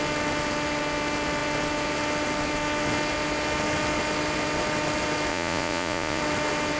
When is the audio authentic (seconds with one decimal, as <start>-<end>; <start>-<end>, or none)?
0.0-5.3; 6.2-6.8